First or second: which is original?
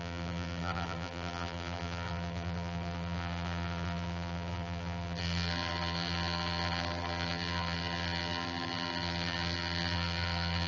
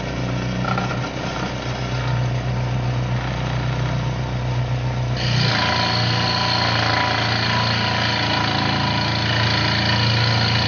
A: second